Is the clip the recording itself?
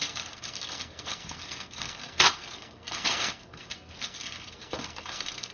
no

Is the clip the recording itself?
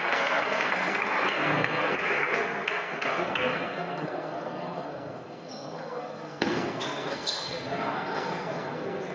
no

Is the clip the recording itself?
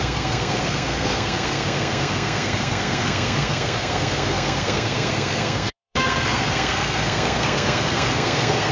no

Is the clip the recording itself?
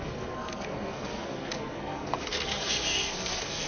no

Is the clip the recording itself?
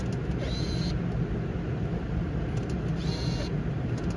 yes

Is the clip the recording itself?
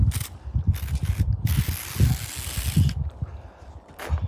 yes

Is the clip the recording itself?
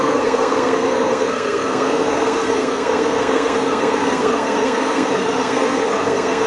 no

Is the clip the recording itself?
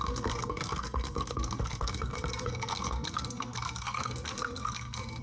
no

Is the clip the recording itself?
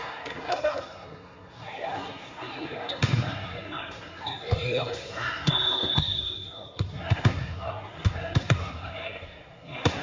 no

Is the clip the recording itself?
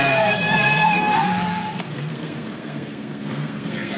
no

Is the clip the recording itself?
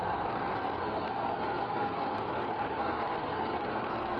no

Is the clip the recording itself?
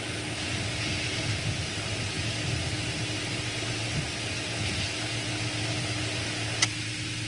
yes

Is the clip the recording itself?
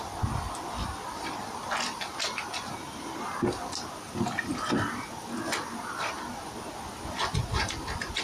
yes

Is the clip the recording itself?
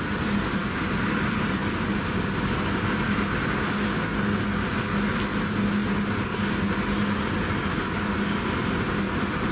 yes